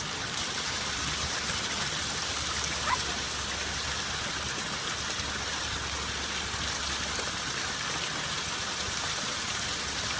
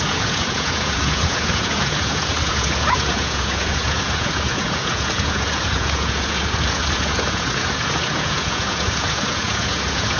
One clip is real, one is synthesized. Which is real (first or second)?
first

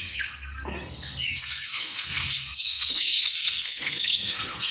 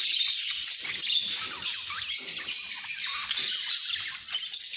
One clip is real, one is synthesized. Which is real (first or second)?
second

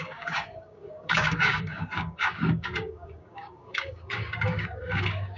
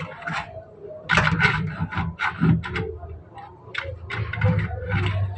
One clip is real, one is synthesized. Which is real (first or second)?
second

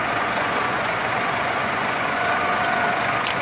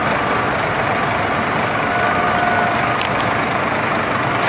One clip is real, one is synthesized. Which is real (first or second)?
second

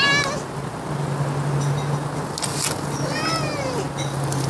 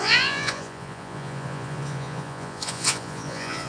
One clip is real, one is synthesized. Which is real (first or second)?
first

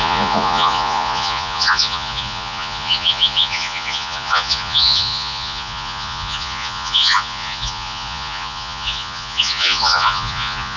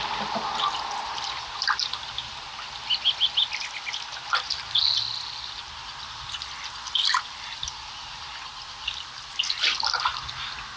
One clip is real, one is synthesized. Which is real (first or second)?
second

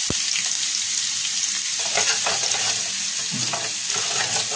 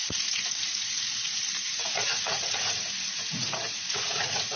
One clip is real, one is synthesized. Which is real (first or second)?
first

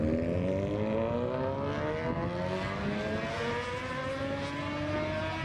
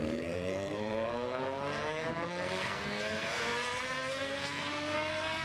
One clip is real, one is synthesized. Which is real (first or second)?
first